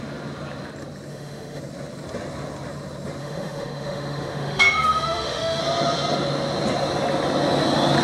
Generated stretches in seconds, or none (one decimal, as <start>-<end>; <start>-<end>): 1.1-1.6; 3.2-5.6